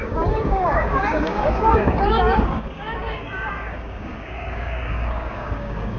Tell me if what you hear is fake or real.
fake